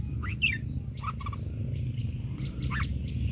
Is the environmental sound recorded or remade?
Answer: recorded